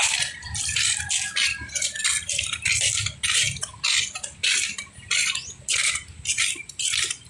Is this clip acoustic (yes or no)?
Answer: yes